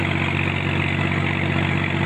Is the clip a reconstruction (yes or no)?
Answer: no